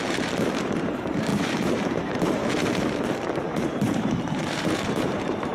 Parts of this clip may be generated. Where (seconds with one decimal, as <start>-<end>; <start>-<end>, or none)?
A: 0.0-5.5